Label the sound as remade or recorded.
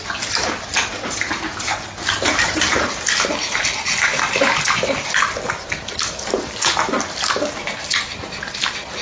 recorded